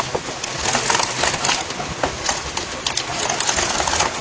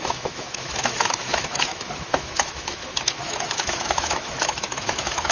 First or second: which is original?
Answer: first